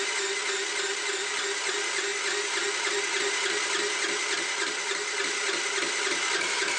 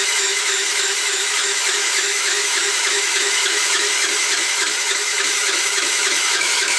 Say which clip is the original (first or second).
first